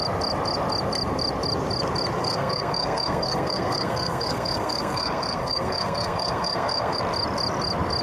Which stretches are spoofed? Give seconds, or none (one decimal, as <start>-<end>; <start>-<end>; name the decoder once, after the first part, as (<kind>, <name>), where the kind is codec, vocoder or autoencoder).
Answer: 2.2-7.0 (codec, SNAC)